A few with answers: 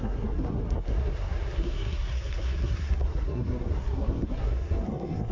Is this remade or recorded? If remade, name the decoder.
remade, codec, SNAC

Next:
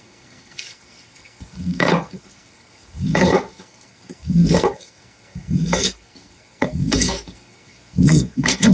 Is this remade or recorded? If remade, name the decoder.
remade, codec, SNAC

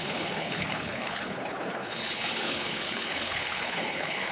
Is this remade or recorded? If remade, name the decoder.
remade, codec, HILCodec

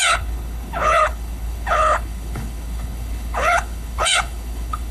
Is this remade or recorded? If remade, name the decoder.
remade, codec, HILCodec